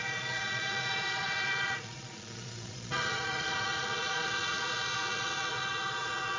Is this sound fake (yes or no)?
yes